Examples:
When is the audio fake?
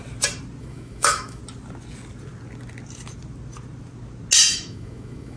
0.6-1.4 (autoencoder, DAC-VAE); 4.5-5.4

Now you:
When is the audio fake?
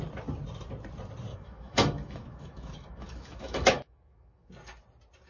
1.3-4.5 (autoencoder, DAC-VAE)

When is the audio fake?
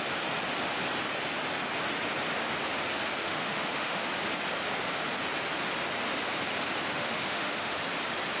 3.2-4.1 (autoencoder, DAC-VAE); 6.9-7.8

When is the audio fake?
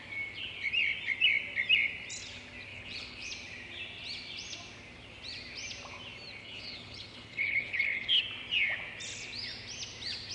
2.7-3.3 (codec, HILCodec); 6.4-8.2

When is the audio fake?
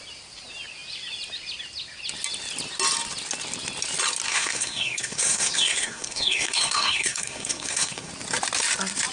4.3-8.1 (codec, SNAC)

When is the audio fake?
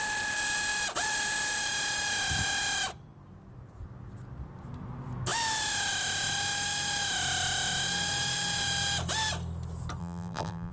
10.0-10.7 (vocoder, BigVGAN v2)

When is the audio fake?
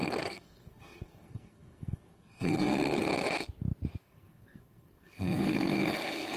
0.0-3.1 (codec, SNAC); 4.0-6.4